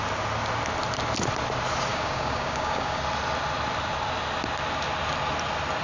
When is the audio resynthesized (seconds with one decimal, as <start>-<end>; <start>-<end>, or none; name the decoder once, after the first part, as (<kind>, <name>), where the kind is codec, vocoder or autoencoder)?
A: 1.9-3.0 (codec, DAC)